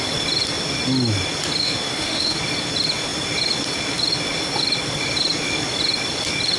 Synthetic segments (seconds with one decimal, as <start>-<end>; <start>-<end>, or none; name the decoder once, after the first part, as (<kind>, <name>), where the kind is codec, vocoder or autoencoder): 1.6-2.4 (autoencoder, DAC-VAE)